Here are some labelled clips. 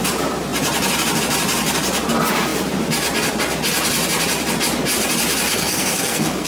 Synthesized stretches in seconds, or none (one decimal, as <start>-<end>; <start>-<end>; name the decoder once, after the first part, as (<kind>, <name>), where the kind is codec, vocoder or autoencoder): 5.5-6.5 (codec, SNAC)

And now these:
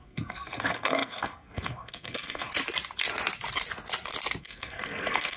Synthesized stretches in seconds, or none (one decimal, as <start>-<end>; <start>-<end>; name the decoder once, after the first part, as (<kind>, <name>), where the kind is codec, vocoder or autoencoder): 0.0-2.5 (codec, SNAC); 4.4-5.4

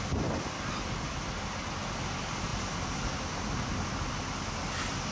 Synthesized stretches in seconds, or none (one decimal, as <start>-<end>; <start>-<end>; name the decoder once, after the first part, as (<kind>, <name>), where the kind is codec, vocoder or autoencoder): none